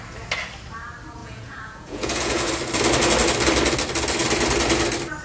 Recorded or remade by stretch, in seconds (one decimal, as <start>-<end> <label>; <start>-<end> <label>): 0.0-1.2 recorded; 1.2-2.5 remade; 2.5-5.2 recorded